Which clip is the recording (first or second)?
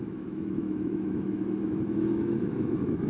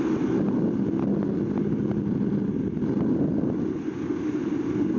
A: second